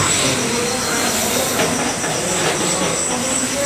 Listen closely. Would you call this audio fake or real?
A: real